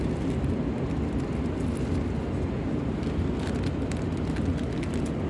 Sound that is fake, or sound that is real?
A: real